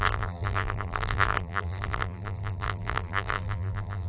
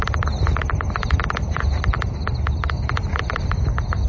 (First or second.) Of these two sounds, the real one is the second